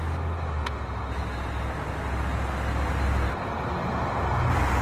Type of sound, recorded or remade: recorded